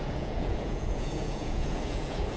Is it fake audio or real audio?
fake